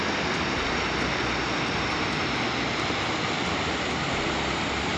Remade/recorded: recorded